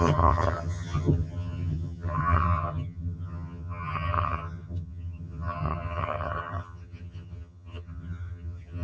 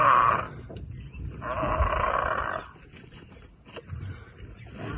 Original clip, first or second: second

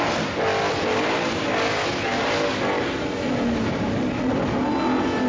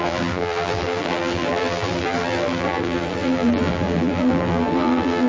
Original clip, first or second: first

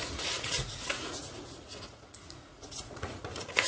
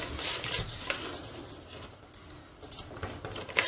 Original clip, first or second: second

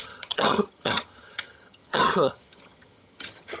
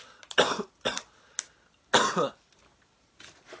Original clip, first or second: second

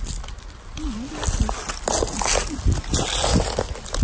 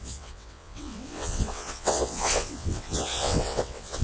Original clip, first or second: first